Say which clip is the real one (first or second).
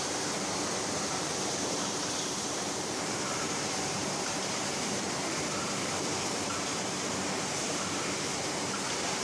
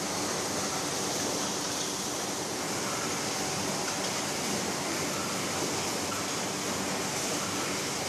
second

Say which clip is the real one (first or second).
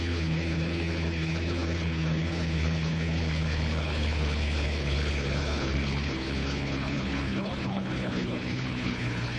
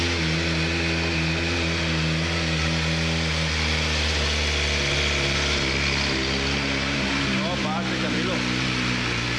second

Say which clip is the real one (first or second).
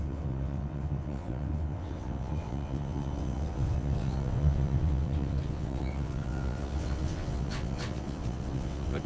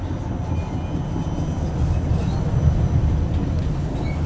second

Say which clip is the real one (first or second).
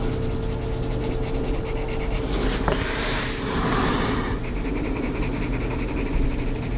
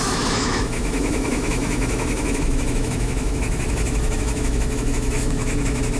first